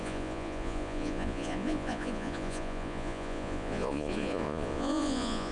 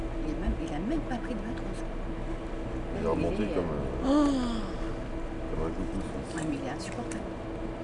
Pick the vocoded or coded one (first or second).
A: first